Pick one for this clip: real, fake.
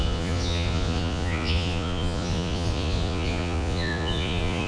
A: fake